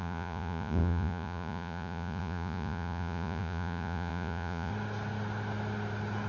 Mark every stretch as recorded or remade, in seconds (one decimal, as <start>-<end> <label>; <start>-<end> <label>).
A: 0.0-4.7 remade; 4.7-6.3 recorded